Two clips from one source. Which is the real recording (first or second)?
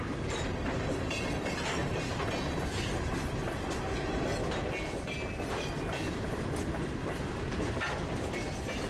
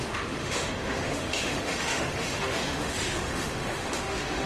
first